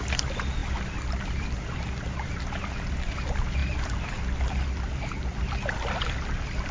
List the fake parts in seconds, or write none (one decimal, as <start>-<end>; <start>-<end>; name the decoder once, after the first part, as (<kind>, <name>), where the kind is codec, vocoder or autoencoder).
none

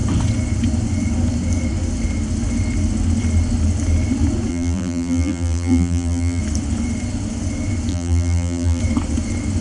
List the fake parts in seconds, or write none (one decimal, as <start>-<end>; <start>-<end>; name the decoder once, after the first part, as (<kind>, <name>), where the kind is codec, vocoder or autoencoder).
4.5-6.4 (vocoder, BigVGAN v2); 7.9-8.8

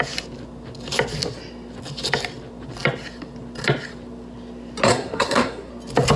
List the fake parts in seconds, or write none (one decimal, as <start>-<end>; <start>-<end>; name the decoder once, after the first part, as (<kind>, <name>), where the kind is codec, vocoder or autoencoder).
4.9-5.7 (codec, SNAC)

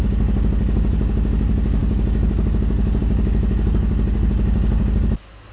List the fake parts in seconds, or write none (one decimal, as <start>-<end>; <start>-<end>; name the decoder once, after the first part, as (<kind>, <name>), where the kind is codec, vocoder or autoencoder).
none

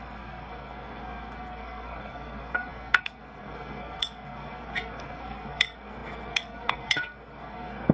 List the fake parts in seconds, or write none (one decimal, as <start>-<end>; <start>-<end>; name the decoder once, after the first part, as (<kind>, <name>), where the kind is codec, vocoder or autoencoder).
0.0-7.9 (codec, SNAC)

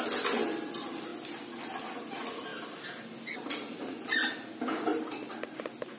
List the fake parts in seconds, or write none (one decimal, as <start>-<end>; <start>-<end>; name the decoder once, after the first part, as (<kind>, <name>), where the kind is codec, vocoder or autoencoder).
none

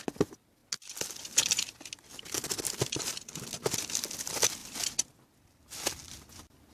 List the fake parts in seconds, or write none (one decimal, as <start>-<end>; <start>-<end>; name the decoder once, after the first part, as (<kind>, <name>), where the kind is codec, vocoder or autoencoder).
none